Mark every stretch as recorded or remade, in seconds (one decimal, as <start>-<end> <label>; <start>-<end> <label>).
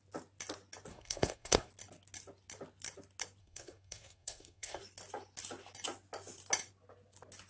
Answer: 0.0-0.9 recorded; 0.9-1.7 remade; 1.7-3.4 recorded; 3.4-4.8 remade; 4.8-7.5 recorded